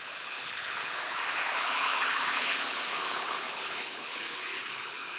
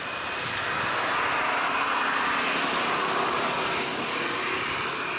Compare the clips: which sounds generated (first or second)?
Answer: first